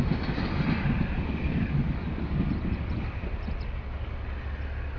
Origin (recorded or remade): recorded